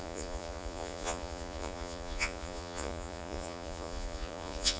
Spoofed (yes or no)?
yes